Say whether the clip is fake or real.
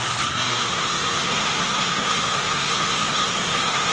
fake